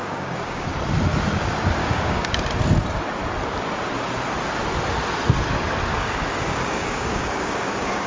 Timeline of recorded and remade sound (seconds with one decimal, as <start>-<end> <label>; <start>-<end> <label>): 0.0-0.7 remade; 0.7-1.8 recorded; 1.8-2.4 remade; 2.4-5.9 recorded; 5.9-8.1 remade